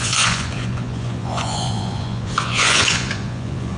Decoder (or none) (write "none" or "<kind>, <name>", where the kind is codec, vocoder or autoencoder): vocoder, Vocos